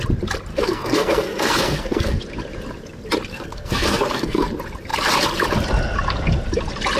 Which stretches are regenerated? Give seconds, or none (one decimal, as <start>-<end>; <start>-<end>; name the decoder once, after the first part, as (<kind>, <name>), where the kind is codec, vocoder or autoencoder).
0.5-2.2 (codec, SNAC); 3.3-4.5